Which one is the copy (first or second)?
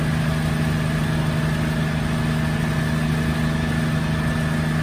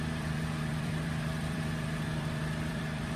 second